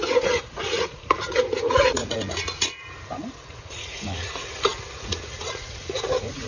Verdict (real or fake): fake